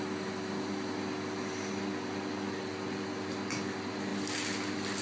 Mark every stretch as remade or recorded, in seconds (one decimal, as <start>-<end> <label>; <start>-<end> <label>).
0.0-5.0 recorded